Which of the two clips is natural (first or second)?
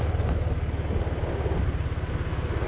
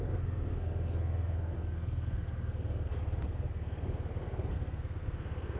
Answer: first